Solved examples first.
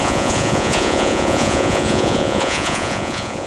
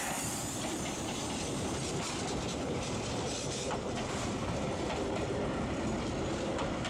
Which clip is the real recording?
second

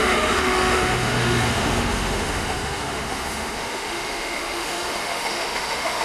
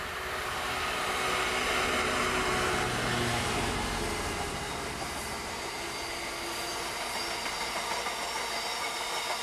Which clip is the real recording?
second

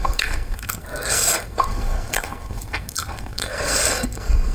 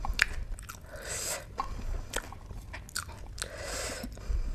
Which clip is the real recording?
second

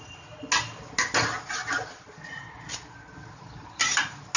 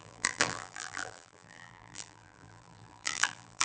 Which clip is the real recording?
first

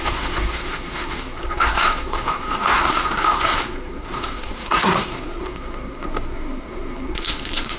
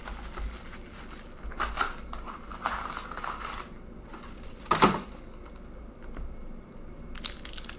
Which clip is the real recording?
second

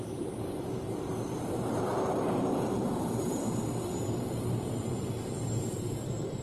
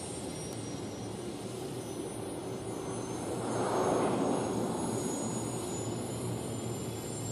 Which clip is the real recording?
second